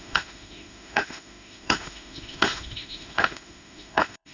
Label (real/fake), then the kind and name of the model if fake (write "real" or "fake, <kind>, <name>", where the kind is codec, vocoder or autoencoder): fake, autoencoder, DAC-VAE